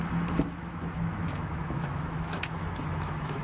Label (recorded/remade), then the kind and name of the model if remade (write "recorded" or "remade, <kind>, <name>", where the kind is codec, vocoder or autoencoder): remade, autoencoder, DAC-VAE